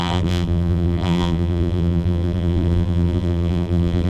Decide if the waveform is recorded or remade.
remade